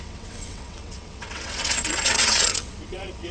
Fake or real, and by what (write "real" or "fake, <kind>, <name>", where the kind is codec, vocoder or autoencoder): fake, vocoder, WaveNeXt